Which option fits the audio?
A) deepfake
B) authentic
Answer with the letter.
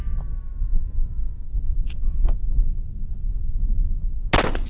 B